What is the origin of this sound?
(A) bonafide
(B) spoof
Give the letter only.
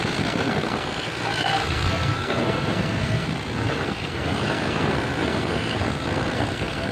B